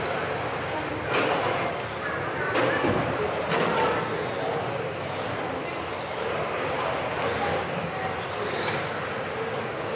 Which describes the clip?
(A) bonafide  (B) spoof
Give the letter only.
A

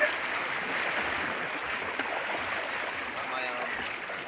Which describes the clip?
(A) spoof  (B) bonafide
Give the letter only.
B